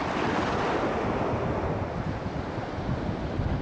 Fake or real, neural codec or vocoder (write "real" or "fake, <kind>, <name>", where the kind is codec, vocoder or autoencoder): real